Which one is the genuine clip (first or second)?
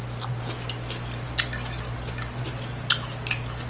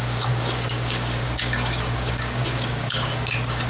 first